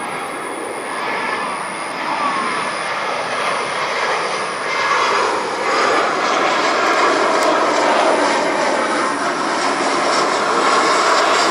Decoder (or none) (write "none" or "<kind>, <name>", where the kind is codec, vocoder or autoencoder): none